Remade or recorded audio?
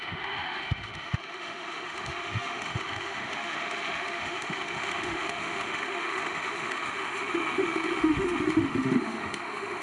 remade